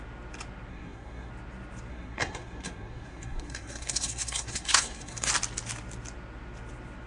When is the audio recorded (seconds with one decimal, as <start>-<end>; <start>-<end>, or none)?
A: 0.0-0.7; 1.3-1.9; 5.3-7.1